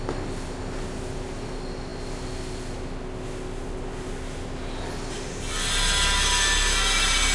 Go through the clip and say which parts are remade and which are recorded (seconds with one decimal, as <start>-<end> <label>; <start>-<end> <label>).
0.0-7.3 recorded